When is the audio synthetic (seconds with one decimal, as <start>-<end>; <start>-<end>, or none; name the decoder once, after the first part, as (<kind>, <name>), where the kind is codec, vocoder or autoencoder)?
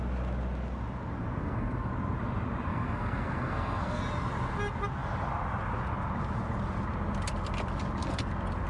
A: 1.4-1.9 (codec, SNAC); 2.7-4.0